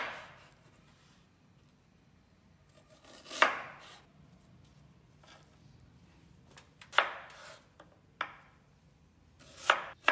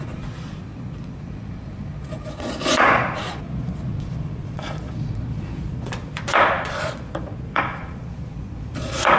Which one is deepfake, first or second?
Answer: second